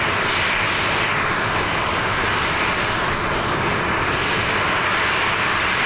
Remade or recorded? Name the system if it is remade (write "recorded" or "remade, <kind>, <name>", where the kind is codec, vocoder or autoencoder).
recorded